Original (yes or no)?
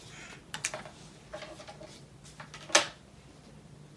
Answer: yes